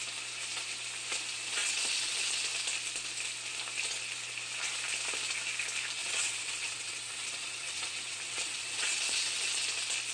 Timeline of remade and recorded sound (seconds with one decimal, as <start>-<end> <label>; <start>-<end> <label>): 0.0-1.6 recorded; 1.6-2.1 remade; 2.1-6.0 recorded; 6.0-9.3 remade; 9.3-10.1 recorded